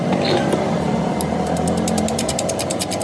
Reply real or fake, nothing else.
fake